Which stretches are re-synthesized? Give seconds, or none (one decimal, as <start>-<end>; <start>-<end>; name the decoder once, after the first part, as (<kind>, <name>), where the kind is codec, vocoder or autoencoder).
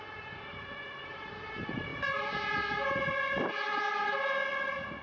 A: 0.0-1.9 (vocoder, BigVGAN v2)